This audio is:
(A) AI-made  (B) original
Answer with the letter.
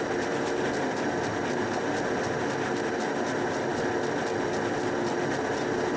B